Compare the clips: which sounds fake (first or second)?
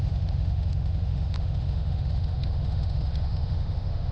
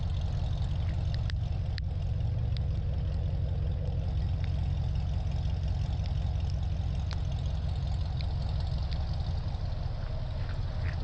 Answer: first